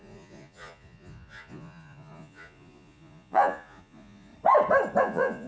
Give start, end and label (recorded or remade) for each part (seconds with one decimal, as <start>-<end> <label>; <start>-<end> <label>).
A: 0.0-4.3 remade; 4.3-5.0 recorded; 5.0-5.5 remade